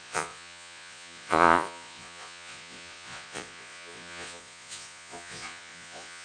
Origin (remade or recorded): remade